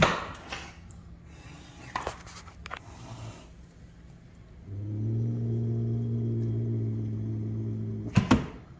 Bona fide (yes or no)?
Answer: yes